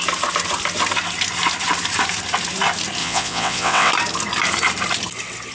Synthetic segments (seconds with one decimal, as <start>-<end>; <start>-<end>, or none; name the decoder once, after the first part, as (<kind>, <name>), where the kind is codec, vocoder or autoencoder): 3.0-3.9 (vocoder, WaveNeXt)